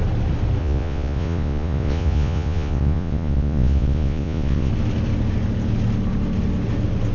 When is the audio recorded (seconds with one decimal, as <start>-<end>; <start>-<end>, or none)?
0.0-0.6; 4.7-7.1